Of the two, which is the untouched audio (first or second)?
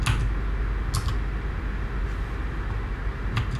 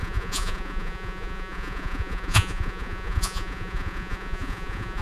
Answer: first